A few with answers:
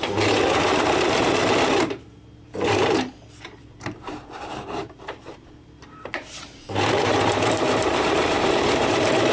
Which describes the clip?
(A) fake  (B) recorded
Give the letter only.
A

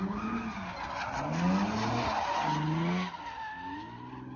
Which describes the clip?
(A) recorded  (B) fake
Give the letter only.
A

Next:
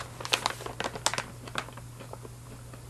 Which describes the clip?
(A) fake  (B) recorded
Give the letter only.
B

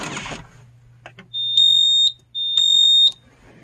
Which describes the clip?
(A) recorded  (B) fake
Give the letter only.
A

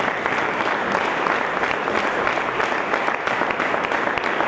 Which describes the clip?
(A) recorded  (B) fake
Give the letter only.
A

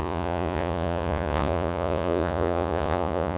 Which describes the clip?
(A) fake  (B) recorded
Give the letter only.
A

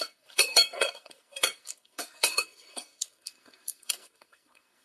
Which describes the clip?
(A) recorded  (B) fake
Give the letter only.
B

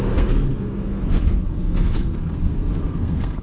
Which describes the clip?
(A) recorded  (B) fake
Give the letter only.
B